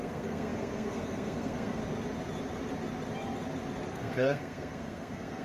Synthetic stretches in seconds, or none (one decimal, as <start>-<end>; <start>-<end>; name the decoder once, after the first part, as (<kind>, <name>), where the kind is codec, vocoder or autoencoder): 0.0-1.8 (codec, SNAC); 3.9-5.4